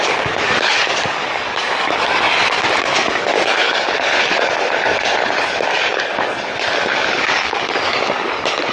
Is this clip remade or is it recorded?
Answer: remade